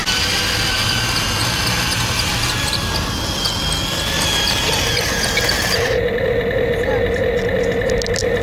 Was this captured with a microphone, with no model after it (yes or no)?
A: yes